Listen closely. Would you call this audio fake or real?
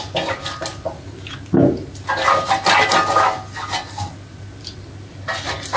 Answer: real